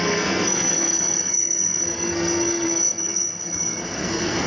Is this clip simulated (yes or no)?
yes